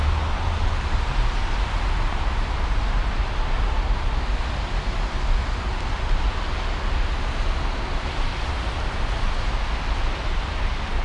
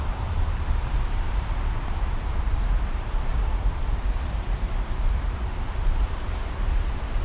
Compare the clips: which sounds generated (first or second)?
second